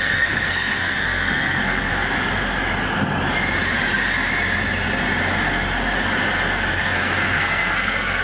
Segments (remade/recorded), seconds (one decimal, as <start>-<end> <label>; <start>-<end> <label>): 0.0-1.9 remade; 1.9-6.8 recorded; 6.8-8.2 remade